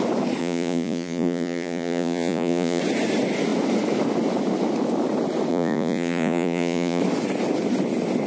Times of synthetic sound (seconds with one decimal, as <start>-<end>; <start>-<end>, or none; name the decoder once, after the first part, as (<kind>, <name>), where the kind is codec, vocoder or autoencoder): 0.4-2.8 (vocoder, Vocos); 5.5-7.0